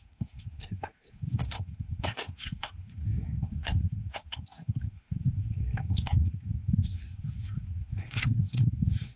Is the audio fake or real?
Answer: fake